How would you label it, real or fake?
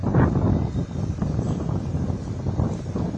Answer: real